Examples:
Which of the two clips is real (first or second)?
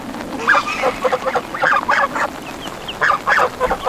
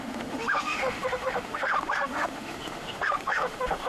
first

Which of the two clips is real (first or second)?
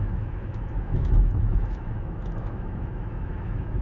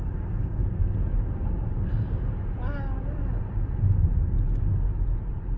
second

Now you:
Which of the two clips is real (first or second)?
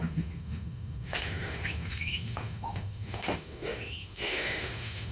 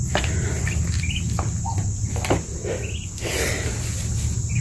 second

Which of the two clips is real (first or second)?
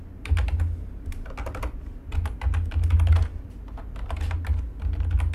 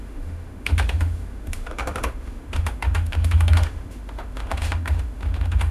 first